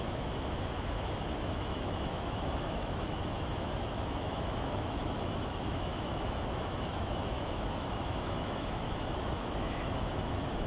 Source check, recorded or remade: remade